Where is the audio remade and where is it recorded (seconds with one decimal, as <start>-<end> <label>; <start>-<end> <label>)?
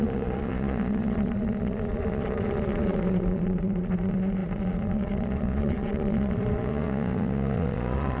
0.0-8.2 remade